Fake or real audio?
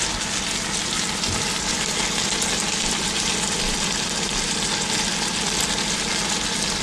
real